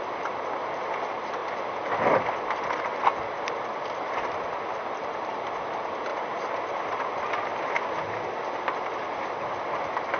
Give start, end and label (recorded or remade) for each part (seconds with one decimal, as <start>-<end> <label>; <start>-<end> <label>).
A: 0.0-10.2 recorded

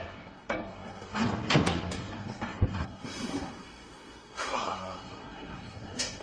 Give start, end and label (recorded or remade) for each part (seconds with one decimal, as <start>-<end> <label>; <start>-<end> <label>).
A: 0.0-6.2 remade

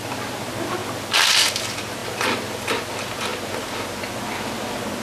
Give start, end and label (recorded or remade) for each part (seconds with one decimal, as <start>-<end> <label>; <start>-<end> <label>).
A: 0.0-5.0 recorded